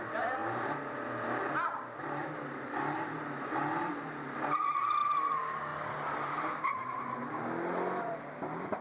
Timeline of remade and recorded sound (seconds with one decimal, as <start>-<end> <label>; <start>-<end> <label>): 0.0-8.8 recorded